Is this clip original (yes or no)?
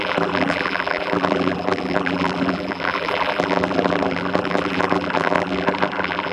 no